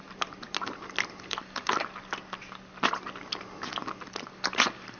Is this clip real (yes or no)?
yes